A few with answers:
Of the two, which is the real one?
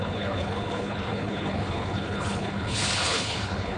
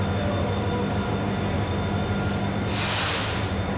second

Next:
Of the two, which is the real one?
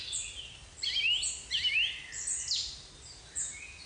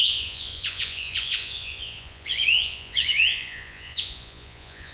first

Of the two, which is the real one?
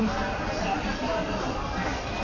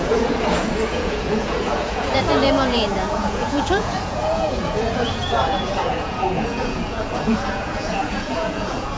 first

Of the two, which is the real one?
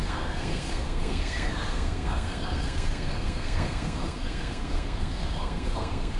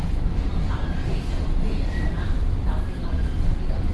second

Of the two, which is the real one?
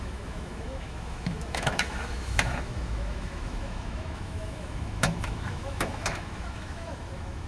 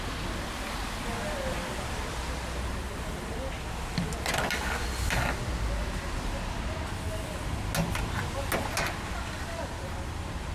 second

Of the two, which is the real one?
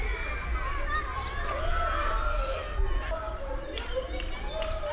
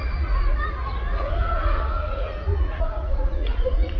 first